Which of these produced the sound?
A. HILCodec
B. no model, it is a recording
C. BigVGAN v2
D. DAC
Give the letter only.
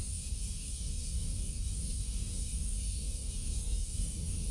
D